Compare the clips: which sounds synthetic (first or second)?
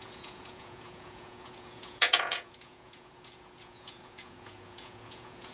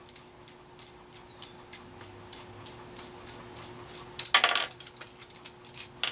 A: first